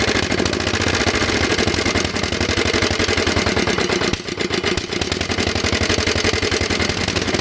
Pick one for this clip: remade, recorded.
recorded